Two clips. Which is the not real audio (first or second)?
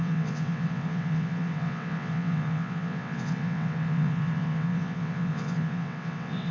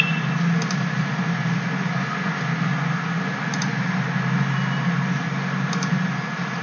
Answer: first